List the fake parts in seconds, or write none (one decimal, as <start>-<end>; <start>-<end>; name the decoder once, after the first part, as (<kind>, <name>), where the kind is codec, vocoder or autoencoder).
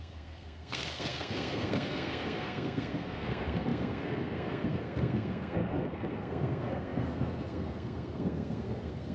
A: 0.0-9.1 (codec, SNAC)